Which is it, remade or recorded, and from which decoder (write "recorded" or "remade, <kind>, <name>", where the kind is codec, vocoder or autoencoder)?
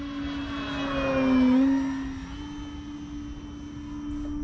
recorded